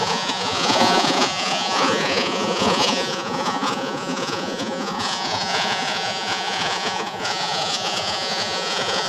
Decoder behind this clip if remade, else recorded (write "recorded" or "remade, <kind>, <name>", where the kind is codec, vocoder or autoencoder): remade, vocoder, Vocos